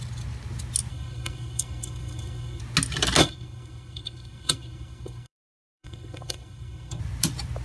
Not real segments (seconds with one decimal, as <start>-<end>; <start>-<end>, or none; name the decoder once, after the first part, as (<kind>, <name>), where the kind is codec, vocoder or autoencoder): 0.9-2.6 (codec, SNAC); 3.2-7.0